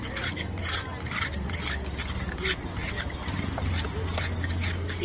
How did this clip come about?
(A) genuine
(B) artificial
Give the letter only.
A